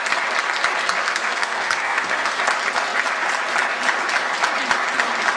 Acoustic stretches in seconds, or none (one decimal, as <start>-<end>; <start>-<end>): 0.0-1.0; 2.4-5.4